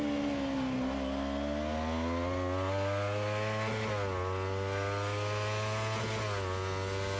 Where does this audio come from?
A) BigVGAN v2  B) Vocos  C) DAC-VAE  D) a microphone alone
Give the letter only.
D